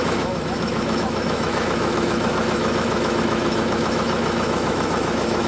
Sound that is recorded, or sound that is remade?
remade